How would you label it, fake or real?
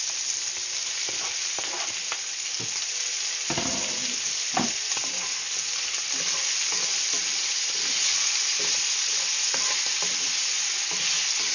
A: real